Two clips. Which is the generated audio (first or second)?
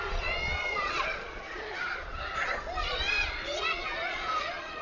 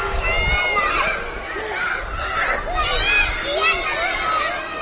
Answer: first